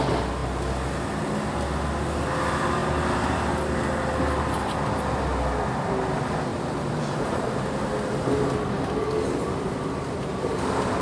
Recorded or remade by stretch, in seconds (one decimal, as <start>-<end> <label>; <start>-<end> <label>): 0.0-6.5 recorded; 6.5-7.9 remade; 7.9-11.0 recorded